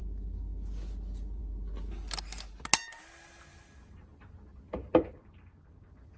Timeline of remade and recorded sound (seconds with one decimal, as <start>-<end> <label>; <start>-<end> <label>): 0.0-6.2 recorded